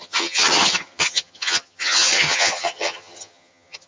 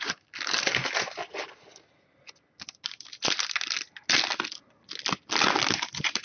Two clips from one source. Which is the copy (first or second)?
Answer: first